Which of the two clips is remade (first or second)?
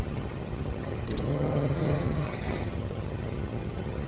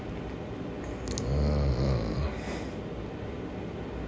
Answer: first